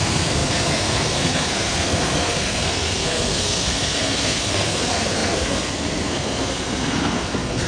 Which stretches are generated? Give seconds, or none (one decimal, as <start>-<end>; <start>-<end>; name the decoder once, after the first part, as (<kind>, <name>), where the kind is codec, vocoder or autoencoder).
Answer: 0.0-7.7 (codec, SNAC)